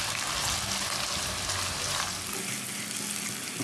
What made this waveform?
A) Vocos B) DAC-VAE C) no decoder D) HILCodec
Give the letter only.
C